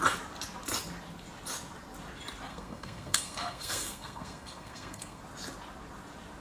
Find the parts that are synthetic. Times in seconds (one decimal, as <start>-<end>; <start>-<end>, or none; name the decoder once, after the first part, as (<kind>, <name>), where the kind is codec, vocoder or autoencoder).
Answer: 2.5-5.2 (codec, SNAC)